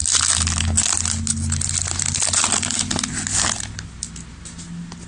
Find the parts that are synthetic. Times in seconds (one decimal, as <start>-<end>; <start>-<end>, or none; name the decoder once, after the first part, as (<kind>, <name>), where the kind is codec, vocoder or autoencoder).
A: none